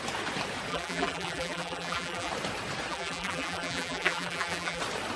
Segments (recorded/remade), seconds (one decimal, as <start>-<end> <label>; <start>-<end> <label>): 0.0-0.7 recorded; 0.7-2.3 remade; 2.3-2.9 recorded; 2.9-4.8 remade; 4.8-5.2 recorded